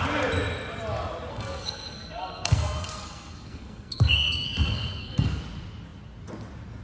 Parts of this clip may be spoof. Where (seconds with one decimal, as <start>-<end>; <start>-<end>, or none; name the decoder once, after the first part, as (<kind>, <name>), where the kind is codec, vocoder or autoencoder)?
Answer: 1.3-5.4 (codec, SNAC)